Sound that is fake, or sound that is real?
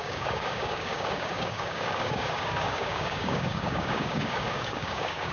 fake